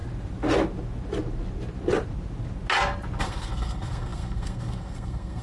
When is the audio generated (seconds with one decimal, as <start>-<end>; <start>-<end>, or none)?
3.2-5.4